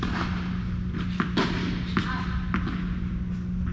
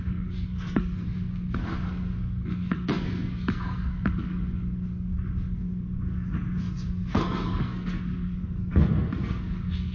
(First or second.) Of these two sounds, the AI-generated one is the second